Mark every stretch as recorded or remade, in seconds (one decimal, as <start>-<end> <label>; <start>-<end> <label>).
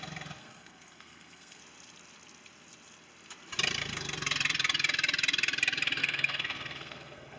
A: 0.0-0.4 recorded; 0.4-1.6 remade; 1.6-6.0 recorded; 6.0-7.4 remade